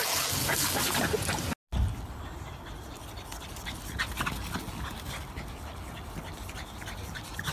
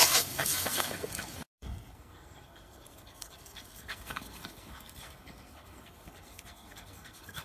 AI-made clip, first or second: second